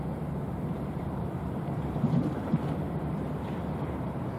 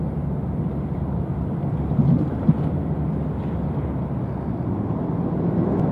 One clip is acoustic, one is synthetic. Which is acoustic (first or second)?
second